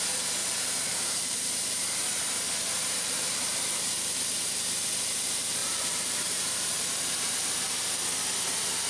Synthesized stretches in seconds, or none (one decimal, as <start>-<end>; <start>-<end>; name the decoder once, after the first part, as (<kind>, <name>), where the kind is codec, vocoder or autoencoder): 0.4-3.8 (vocoder, BigVGAN v2); 5.6-7.8